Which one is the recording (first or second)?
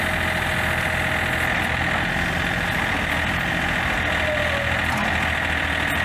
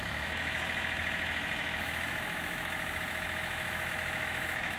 first